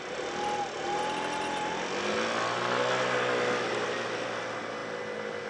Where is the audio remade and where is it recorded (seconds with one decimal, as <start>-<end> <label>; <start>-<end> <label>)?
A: 0.0-5.5 recorded